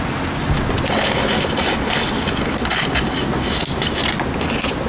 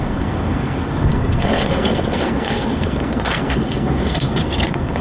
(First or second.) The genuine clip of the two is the first